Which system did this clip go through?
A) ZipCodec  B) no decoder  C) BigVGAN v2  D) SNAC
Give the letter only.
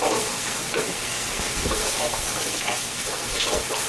D